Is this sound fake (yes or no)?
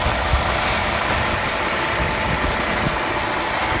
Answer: no